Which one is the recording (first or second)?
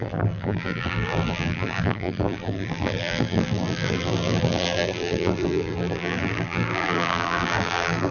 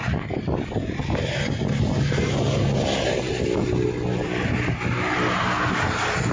second